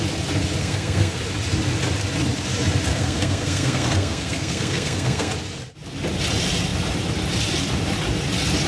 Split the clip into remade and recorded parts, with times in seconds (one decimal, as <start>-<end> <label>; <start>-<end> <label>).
0.0-0.6 recorded; 0.6-1.2 remade; 1.2-2.9 recorded; 2.9-5.3 remade; 5.3-8.7 recorded